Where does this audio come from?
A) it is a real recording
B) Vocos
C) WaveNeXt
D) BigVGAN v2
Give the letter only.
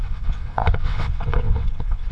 C